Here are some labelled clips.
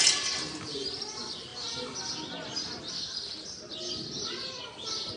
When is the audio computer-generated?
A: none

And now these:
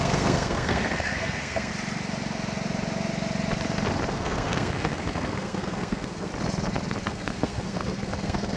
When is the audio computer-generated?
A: 0.0-1.7 (codec, SNAC); 4.1-6.3; 7.1-8.6

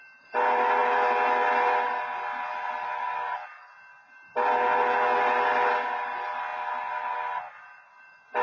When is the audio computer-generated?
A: none